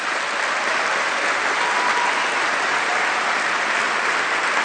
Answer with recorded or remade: recorded